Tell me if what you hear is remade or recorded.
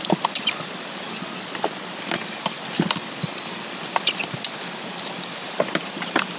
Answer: recorded